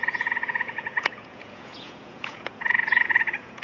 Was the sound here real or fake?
fake